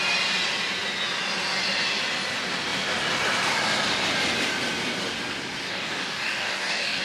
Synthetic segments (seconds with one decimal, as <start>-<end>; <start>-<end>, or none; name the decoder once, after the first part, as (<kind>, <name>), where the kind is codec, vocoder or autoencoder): 5.7-7.0 (codec, DAC)